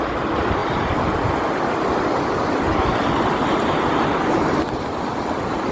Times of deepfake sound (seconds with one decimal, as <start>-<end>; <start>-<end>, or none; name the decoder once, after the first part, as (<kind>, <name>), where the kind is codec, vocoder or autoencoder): none